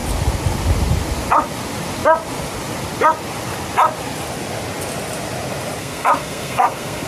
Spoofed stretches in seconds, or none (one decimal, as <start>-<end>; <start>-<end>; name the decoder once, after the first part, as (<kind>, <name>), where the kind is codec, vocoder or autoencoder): 5.8-7.1 (codec, SNAC)